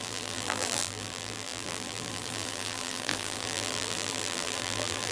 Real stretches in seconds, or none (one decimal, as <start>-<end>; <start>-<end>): none